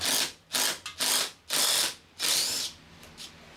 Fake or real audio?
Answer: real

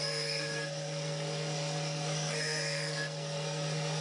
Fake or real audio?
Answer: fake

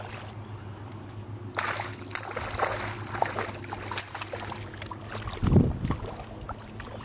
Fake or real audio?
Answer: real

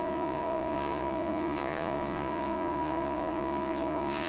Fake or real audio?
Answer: fake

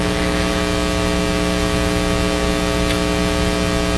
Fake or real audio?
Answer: real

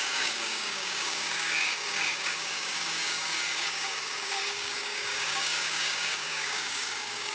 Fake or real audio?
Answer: fake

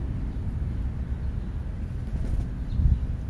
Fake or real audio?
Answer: real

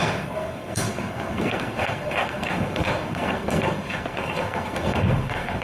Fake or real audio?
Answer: fake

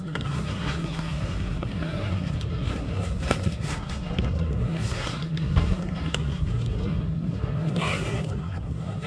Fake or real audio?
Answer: fake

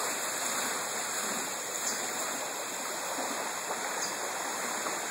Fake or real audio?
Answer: fake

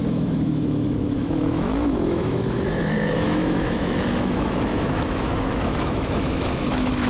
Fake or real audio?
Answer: fake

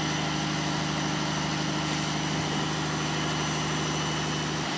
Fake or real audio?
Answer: real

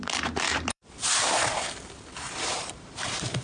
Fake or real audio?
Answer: fake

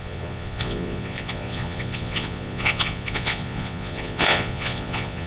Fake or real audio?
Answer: fake